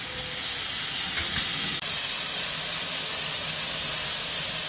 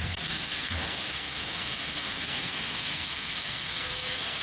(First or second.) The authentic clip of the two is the first